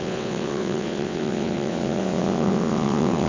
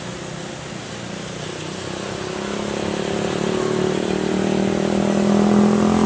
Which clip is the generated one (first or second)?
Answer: first